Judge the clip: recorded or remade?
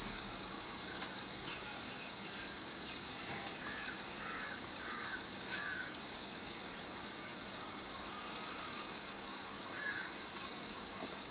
remade